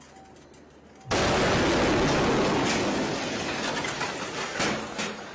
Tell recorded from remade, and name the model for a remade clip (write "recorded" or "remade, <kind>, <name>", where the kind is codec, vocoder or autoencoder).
recorded